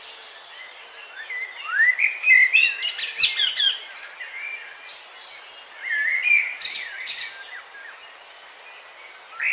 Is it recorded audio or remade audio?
recorded